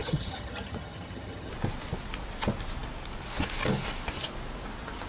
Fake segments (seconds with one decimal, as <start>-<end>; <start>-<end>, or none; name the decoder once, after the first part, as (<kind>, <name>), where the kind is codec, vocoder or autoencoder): 0.0-1.5 (vocoder, HiFi-GAN)

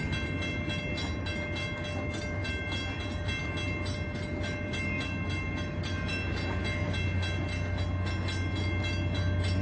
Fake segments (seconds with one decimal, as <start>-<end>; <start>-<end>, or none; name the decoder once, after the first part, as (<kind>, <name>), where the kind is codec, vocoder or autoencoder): none